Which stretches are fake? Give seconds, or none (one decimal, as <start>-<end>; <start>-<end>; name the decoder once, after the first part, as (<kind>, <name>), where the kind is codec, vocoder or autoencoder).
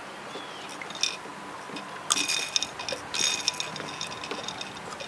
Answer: none